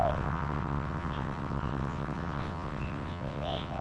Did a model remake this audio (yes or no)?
yes